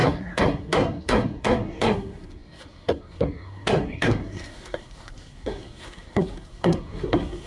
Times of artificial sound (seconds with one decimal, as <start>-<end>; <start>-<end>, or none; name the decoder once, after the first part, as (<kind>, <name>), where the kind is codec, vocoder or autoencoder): 0.0-7.5 (codec, SNAC)

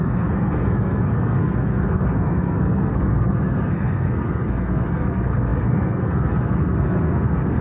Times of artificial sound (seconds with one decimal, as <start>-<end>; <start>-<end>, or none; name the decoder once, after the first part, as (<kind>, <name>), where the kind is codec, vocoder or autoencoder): 0.0-7.6 (codec, SNAC)

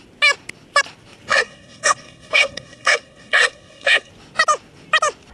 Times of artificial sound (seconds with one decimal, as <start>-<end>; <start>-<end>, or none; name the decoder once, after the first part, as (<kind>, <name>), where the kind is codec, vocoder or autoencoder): 1.3-4.1 (codec, SNAC)

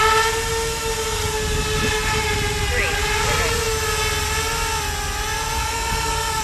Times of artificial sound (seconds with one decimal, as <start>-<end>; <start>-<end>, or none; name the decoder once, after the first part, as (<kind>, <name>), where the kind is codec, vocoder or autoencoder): 5.6-6.4 (codec, SNAC)

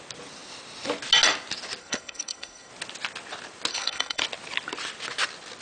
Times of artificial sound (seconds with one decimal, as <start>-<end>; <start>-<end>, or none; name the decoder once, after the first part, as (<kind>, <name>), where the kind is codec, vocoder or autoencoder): 1.8-2.7 (codec, SNAC); 3.7-4.2